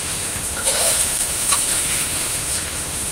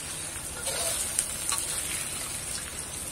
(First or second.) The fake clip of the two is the first